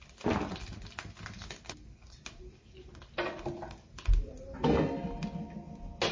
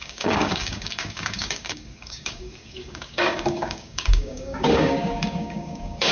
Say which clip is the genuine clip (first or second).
first